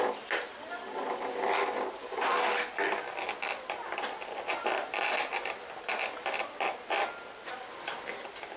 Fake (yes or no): no